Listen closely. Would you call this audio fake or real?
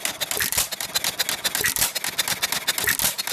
real